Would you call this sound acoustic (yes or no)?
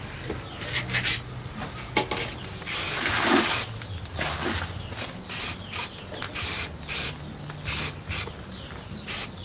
yes